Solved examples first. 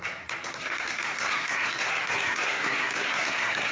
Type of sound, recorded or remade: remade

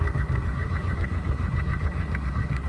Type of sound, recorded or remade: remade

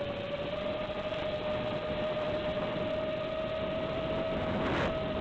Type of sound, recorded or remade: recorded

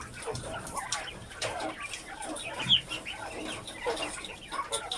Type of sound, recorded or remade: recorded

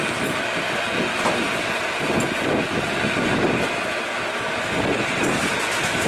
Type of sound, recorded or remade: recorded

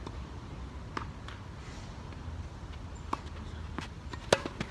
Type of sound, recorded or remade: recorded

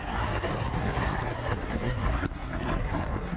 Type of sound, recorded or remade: remade